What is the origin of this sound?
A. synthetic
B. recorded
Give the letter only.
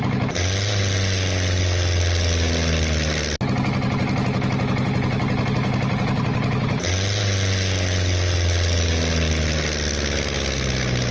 B